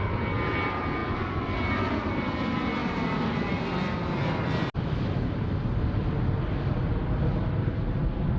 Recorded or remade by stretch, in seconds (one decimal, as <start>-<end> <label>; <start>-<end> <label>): 0.0-2.8 recorded; 2.8-3.5 remade; 3.5-8.4 recorded